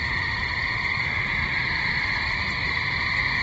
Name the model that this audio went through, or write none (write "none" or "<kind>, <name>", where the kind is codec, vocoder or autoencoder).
none